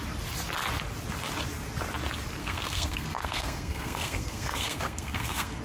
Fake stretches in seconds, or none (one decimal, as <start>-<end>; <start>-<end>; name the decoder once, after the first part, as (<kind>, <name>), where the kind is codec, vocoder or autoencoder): 2.4-5.6 (codec, SNAC)